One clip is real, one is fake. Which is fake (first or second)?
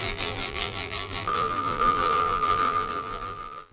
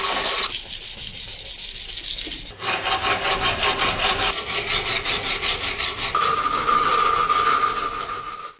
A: first